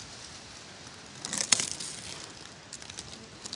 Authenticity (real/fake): real